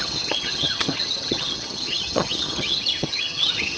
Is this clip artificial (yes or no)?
yes